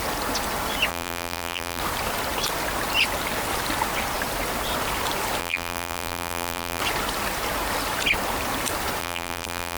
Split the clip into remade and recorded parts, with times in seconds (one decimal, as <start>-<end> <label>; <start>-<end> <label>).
0.0-0.9 recorded; 0.9-1.8 remade; 1.8-5.4 recorded; 5.4-6.8 remade; 6.8-9.0 recorded; 9.0-9.8 remade